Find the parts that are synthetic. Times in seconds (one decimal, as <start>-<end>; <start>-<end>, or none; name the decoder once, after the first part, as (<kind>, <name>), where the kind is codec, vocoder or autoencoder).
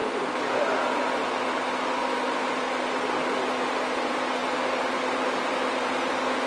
none